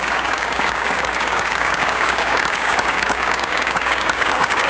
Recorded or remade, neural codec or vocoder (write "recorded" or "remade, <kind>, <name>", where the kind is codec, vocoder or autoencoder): remade, codec, DAC